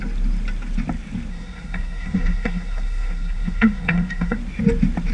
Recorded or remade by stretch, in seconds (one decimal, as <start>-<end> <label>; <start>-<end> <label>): 0.0-1.3 recorded; 1.3-4.4 remade; 4.4-5.1 recorded